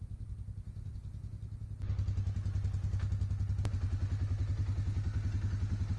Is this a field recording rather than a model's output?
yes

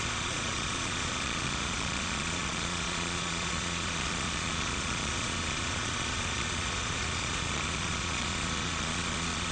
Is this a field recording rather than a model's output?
no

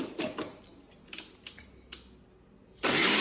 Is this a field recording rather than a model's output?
yes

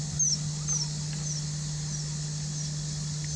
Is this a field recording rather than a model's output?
yes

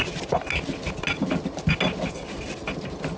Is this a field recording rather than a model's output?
yes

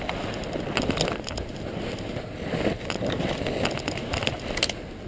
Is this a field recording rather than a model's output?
yes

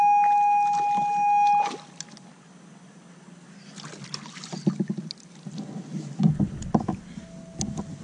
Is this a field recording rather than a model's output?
yes